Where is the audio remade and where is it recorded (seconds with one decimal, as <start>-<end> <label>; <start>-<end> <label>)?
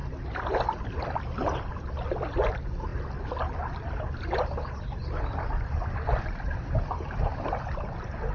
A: 0.0-8.3 recorded